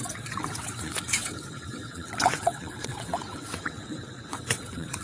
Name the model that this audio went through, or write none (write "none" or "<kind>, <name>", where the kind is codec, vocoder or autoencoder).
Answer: vocoder, WaveNeXt